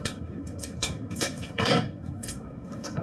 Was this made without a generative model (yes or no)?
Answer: no